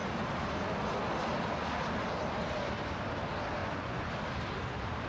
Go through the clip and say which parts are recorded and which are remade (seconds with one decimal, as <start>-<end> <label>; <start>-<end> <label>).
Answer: 0.0-3.6 recorded; 3.6-4.1 remade; 4.1-5.1 recorded